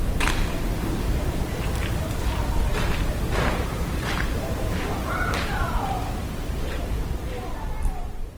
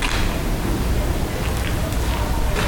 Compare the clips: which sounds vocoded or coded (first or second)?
first